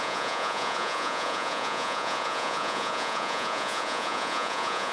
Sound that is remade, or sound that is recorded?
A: remade